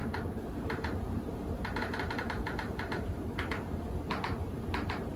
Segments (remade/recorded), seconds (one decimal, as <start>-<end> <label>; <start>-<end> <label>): 0.0-3.1 remade; 3.1-5.2 recorded